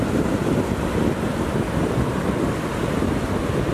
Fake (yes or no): no